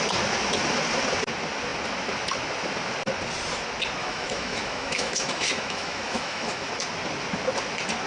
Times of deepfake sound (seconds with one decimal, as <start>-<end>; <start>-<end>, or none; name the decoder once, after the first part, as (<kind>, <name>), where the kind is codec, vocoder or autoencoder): 4.0-6.7 (autoencoder, DAC-VAE)